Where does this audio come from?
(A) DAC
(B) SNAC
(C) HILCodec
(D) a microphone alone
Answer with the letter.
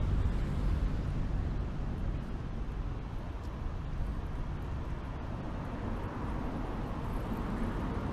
D